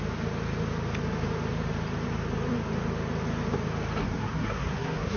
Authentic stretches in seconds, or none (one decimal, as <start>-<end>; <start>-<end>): 0.0-4.0